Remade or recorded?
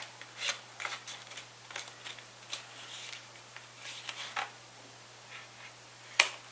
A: recorded